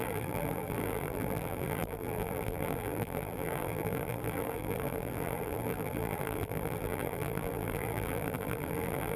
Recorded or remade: remade